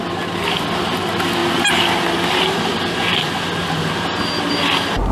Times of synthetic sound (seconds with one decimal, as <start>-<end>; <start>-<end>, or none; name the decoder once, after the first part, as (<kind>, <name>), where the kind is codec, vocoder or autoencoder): none